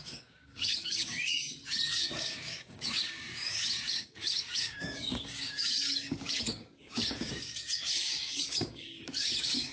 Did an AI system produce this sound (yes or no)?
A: yes